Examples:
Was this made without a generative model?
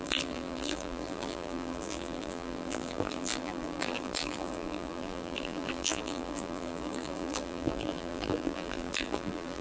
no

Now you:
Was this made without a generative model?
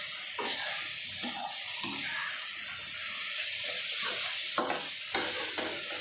yes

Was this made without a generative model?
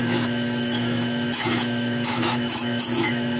no